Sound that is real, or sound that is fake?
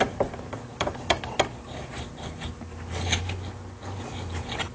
real